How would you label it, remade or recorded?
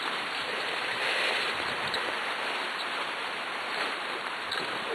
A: remade